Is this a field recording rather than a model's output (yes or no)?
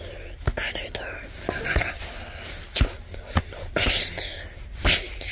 yes